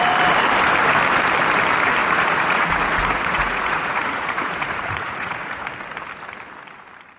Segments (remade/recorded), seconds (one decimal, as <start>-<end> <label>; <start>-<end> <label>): 0.0-2.0 recorded; 2.0-5.7 remade; 5.7-7.2 recorded